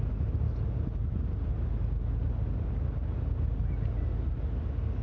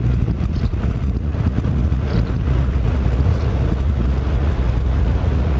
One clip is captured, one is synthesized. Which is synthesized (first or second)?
second